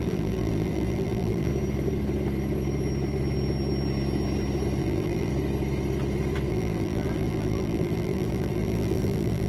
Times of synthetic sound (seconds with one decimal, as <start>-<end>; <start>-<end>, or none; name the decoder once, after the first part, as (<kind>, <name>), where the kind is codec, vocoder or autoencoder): 0.0-1.5 (vocoder, BigVGAN v2); 4.8-5.3; 6.5-9.5